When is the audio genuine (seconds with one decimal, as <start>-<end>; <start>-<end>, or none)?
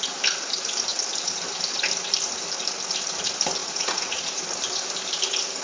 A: 0.0-3.6; 4.4-5.6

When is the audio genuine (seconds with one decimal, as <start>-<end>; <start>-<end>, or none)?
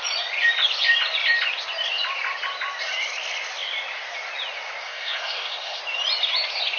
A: 0.0-4.8; 5.8-6.8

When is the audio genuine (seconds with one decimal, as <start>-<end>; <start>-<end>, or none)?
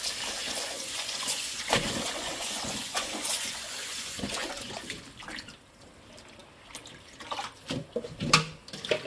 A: 0.0-0.4; 5.0-9.1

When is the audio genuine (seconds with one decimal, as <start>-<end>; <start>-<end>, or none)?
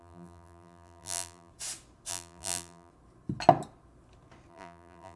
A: 1.5-2.1; 2.9-4.5